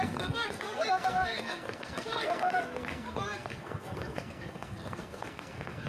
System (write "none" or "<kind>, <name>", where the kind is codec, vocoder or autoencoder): codec, SNAC